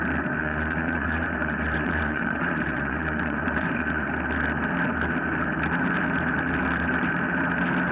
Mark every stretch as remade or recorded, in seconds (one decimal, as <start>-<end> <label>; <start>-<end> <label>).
0.0-0.4 recorded; 0.4-4.1 remade; 4.1-7.9 recorded